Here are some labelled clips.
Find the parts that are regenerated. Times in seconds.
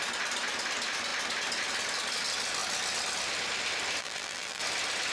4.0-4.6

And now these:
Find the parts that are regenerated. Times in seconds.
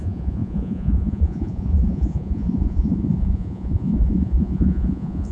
0.0-5.3